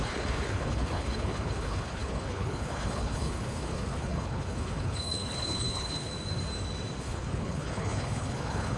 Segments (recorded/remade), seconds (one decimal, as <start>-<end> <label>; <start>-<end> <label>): 0.0-6.1 remade; 6.1-7.0 recorded; 7.0-8.8 remade